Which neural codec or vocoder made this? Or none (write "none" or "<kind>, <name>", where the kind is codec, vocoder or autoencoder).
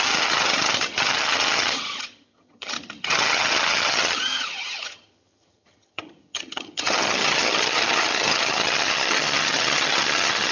vocoder, HiFi-GAN